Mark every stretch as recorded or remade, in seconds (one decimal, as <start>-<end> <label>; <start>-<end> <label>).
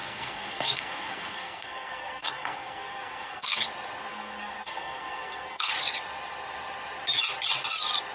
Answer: 0.0-3.6 remade; 3.6-4.1 recorded; 4.1-5.7 remade; 5.7-8.1 recorded